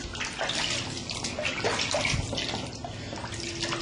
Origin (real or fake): real